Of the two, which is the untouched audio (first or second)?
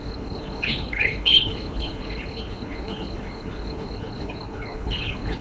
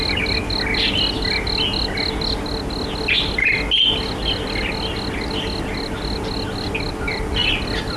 second